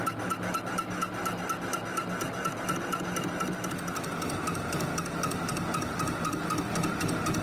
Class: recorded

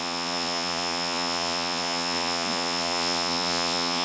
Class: remade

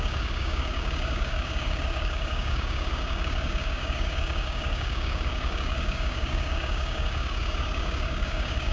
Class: remade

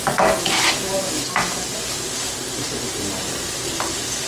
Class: recorded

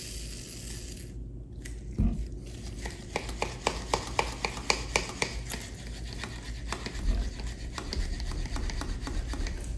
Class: recorded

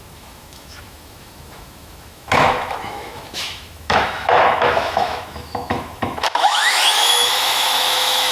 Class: remade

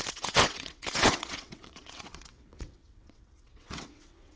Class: remade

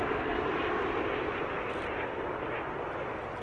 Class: recorded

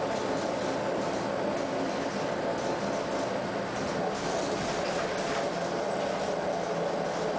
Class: recorded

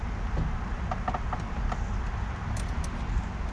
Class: recorded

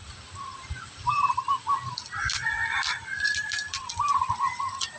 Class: recorded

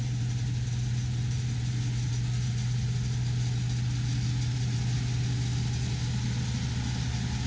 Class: recorded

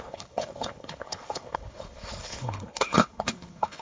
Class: remade